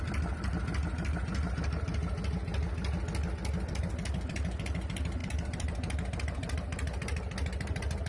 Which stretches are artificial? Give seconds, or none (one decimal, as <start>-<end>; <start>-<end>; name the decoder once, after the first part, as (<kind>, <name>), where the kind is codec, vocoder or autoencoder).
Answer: 0.0-0.5 (vocoder, BigVGAN v2); 3.8-8.1